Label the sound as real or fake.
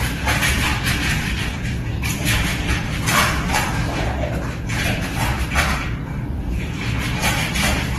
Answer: fake